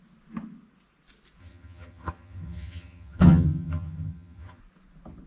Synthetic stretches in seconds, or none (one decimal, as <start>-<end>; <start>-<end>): 1.4-4.6